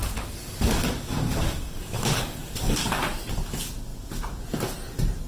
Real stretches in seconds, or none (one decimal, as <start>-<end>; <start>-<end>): 3.0-5.3